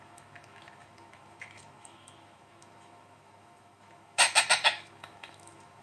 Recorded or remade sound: remade